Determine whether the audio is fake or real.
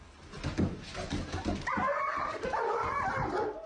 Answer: real